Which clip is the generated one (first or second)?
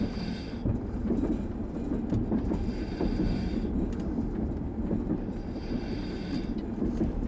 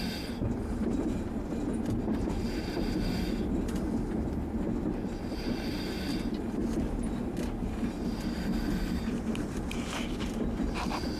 first